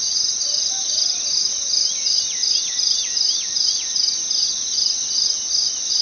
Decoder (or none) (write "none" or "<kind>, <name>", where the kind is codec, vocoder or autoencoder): none